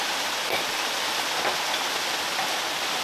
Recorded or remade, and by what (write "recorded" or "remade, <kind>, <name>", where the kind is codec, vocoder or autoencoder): recorded